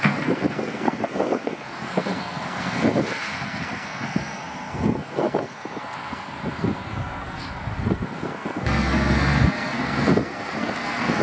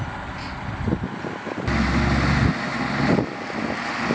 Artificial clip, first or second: first